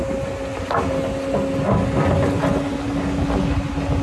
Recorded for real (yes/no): yes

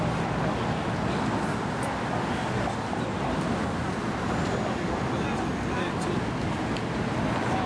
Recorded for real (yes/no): yes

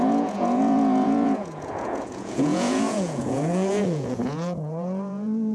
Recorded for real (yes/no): no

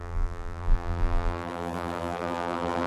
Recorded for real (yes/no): no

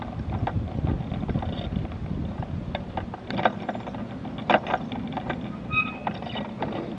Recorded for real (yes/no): yes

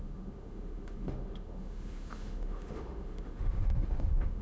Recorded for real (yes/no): no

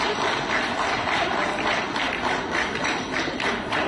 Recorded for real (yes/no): yes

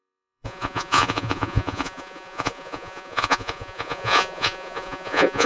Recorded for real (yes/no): no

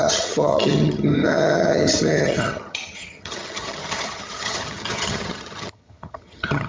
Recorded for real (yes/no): no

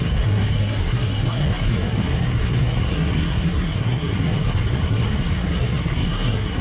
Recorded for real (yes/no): no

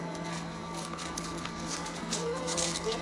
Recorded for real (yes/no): no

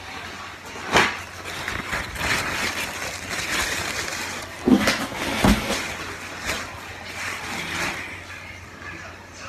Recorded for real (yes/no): yes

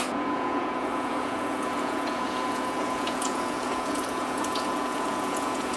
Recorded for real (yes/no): no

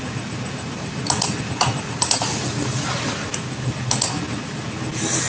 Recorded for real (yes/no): yes